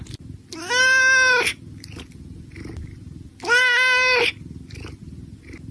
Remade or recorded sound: recorded